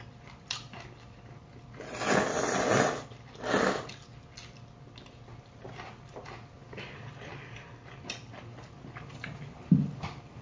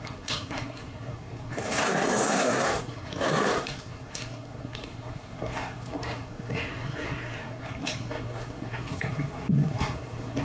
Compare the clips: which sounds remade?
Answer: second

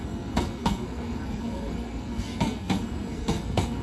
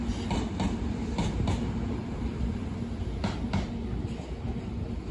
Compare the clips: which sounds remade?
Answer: first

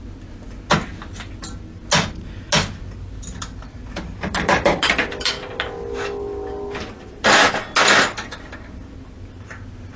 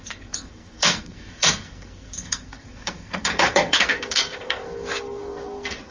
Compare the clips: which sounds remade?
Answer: second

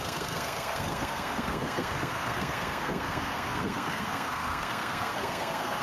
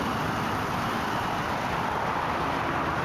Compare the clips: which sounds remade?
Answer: first